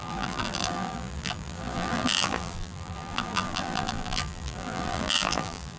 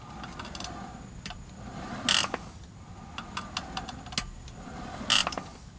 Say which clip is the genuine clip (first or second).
second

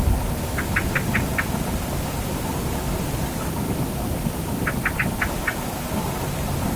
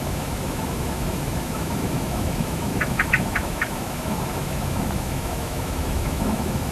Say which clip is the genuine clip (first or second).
first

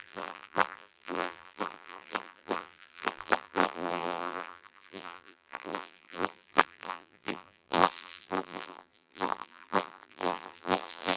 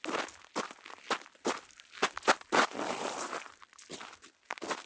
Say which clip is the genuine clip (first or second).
second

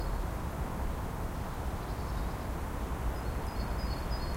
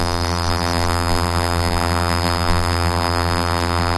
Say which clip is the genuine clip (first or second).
first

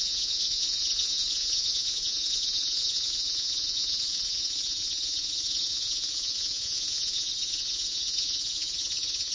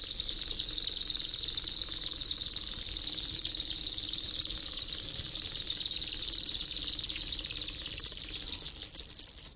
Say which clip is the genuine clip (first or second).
second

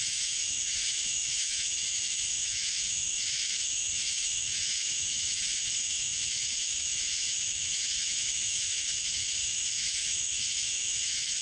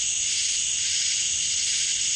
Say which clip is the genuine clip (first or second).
second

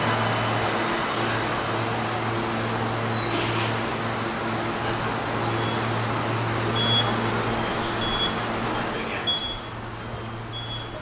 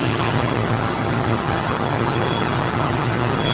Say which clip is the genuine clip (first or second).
first